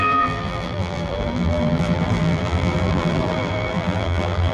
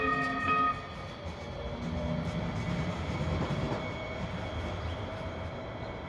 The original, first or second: second